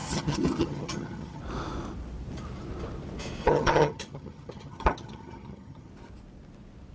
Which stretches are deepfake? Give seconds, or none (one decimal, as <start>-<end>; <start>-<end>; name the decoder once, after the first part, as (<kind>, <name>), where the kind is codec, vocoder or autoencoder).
0.0-1.4 (vocoder, HiFi-GAN); 3.4-5.9